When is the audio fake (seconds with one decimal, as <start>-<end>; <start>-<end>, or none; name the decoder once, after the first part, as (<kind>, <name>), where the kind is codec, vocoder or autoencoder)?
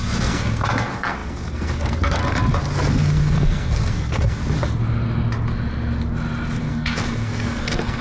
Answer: 0.0-2.2 (codec, SNAC); 2.9-4.4; 6.6-8.0